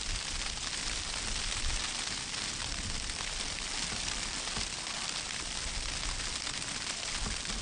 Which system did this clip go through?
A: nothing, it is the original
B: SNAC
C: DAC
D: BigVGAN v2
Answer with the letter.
A